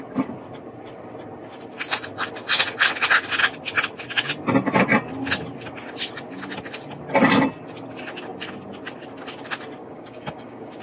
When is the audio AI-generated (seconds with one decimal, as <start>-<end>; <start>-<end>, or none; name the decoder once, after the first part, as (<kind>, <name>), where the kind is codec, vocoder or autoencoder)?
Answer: 9.8-10.8 (codec, DAC)